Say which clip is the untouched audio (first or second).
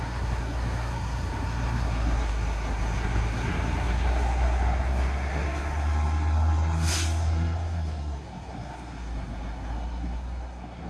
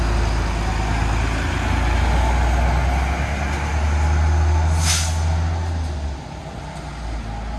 second